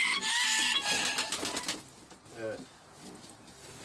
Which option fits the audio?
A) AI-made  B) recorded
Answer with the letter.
B